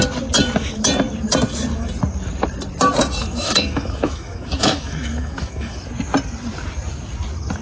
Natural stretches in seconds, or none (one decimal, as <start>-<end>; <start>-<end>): 0.0-3.2; 5.8-7.6